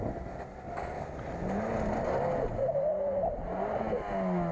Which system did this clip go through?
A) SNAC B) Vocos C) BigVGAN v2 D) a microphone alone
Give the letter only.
D